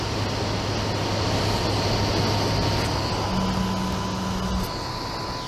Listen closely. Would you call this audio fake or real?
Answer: real